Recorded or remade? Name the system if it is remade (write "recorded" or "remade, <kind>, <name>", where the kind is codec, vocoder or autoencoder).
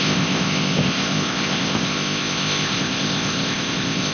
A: remade, codec, ZipCodec